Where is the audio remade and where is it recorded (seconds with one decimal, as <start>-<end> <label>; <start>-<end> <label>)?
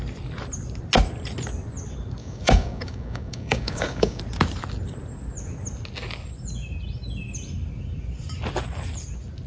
0.0-2.2 recorded; 2.2-4.2 remade; 4.2-9.5 recorded